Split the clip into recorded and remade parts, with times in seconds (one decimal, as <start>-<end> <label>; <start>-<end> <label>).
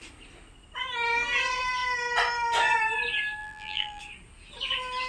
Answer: 0.0-3.4 recorded; 3.4-4.0 remade; 4.0-5.1 recorded